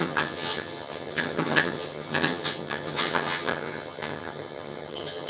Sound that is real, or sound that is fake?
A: fake